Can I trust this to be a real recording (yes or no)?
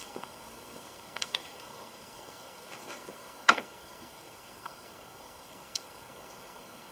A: no